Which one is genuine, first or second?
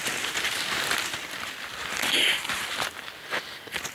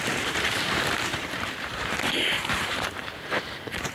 first